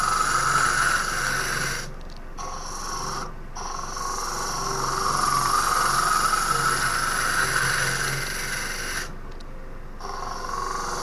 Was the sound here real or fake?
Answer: real